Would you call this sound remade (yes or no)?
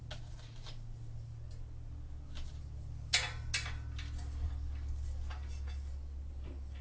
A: no